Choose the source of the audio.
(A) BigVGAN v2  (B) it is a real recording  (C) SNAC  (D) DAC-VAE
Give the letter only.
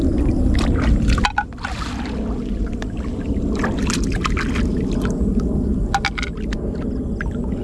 B